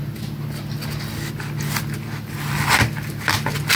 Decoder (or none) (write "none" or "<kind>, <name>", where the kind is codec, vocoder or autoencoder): none